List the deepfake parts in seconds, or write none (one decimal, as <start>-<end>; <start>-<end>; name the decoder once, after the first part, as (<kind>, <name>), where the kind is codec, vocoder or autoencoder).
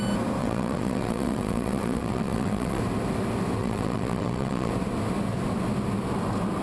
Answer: 0.4-2.8 (vocoder, WaveNeXt); 3.6-4.7